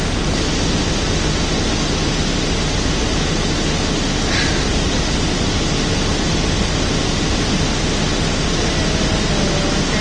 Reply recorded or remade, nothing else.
recorded